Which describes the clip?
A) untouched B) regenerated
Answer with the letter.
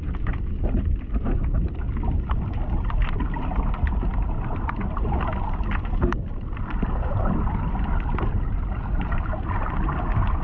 A